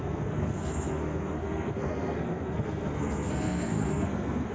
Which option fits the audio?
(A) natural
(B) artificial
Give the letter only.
B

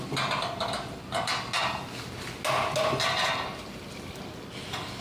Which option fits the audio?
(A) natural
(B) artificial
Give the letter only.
A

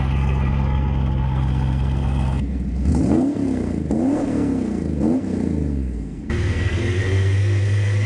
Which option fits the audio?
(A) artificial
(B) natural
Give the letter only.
A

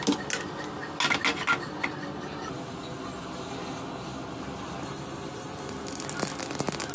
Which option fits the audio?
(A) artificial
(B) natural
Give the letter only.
B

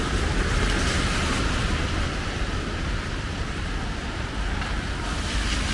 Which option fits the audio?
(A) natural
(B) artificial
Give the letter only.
A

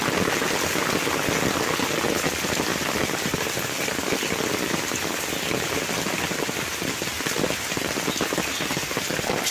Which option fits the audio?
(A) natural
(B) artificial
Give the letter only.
A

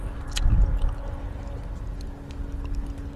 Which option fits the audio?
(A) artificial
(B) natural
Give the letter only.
B